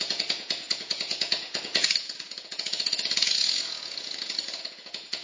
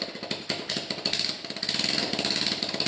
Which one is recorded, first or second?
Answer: second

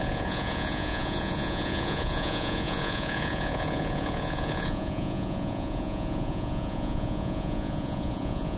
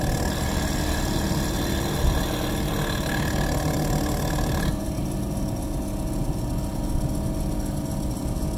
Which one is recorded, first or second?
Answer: second